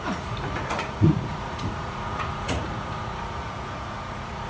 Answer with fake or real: fake